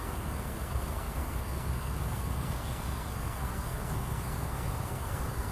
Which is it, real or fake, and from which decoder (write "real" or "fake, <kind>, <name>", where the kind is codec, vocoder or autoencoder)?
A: fake, codec, SNAC